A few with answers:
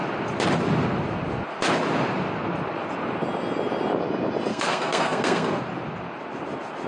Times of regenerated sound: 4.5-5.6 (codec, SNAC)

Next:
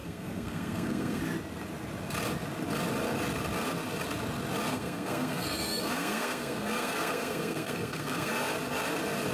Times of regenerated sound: 0.0-1.2 (codec, SNAC); 4.7-8.3

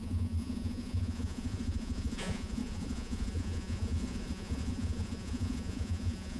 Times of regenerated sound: 0.0-6.4 (vocoder, Vocos)

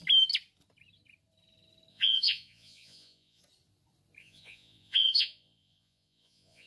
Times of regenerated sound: 1.9-3.4 (vocoder, Vocos); 4.2-6.7

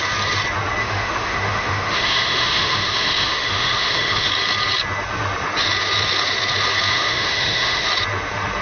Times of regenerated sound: 0.8-4.3 (autoencoder, DAC-VAE); 6.9-7.9

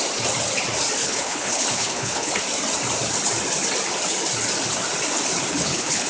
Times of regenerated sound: 1.0-2.4 (codec, HILCodec); 5.5-6.1

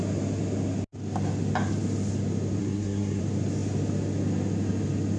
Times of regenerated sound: 2.6-3.2 (codec, SNAC)